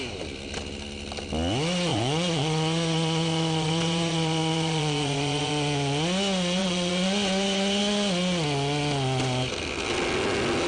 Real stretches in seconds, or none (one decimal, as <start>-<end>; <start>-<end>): 0.0-1.9; 5.5-6.6; 7.8-10.7